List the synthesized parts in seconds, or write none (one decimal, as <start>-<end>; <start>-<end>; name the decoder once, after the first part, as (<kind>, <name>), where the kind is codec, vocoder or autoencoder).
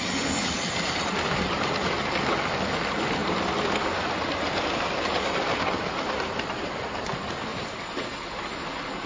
7.5-8.0 (vocoder, BigVGAN v2)